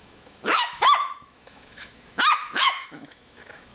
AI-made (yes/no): yes